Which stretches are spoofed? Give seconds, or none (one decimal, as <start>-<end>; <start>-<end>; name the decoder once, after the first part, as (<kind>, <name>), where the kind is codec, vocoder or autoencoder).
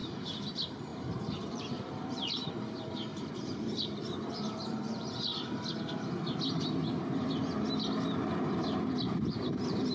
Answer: 0.0-5.3 (vocoder, BigVGAN v2); 8.0-9.9